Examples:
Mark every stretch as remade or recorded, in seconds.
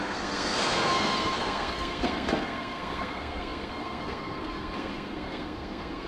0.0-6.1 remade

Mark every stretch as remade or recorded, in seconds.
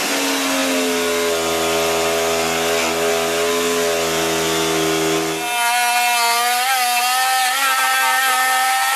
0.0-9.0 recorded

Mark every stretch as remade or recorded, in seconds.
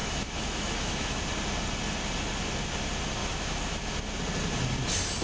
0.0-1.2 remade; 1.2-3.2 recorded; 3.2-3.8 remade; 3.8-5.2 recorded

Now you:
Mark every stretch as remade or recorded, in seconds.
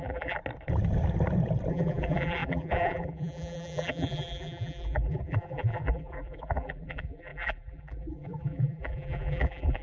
0.0-0.4 remade; 0.4-1.7 recorded; 1.7-9.8 remade